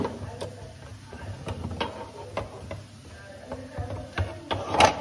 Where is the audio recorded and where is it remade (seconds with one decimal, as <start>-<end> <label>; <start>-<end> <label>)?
0.0-5.0 recorded